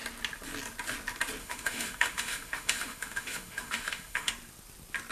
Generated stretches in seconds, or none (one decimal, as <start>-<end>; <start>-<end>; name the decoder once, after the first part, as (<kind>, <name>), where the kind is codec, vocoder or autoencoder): 1.4-4.3 (autoencoder, DAC-VAE)